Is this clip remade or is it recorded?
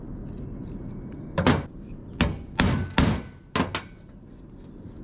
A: recorded